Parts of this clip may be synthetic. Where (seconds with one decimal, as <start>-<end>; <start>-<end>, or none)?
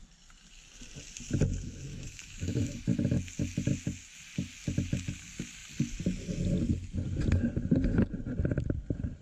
1.9-2.8